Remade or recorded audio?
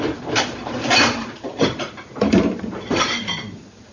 remade